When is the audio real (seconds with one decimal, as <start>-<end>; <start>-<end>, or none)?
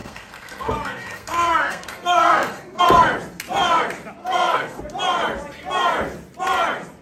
2.8-4.2; 4.8-7.0